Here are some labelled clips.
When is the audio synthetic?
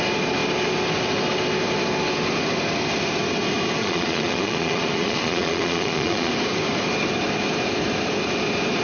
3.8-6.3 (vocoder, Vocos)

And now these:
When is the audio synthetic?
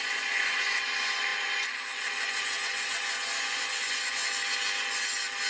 0.0-4.2 (vocoder, Vocos)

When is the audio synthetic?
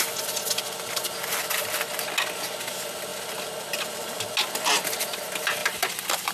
5.6-6.3 (vocoder, BigVGAN v2)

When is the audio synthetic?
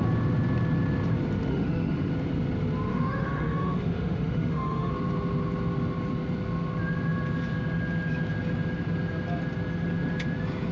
1.5-2.1 (autoencoder, DAC-VAE); 2.9-4.9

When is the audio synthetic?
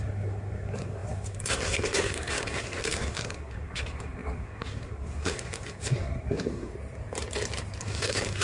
0.0-6.7 (codec, SNAC); 7.8-8.4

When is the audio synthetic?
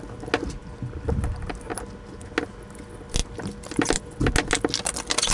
0.6-1.5 (vocoder, BigVGAN v2); 3.2-4.3